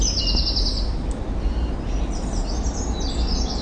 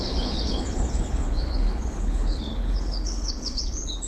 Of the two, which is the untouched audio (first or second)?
first